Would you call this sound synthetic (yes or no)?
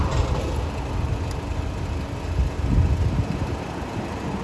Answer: no